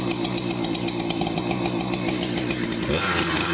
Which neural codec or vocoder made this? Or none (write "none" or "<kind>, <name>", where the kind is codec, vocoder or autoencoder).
none